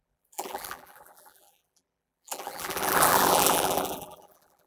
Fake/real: fake